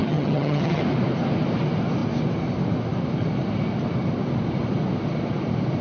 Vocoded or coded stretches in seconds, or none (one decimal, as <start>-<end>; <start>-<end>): 0.0-0.8